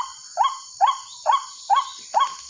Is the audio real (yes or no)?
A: yes